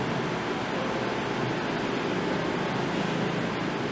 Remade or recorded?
recorded